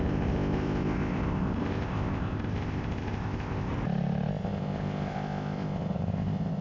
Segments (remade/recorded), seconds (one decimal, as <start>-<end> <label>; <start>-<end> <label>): 0.0-3.7 remade; 3.7-4.3 recorded; 4.3-6.6 remade